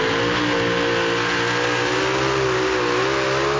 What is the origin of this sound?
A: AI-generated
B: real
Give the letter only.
B